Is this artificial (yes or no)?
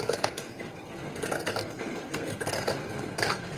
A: yes